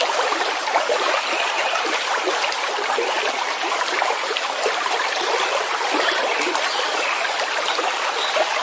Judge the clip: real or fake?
fake